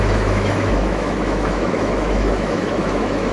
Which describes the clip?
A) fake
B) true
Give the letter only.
A